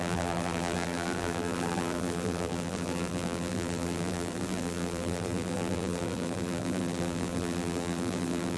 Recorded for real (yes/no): no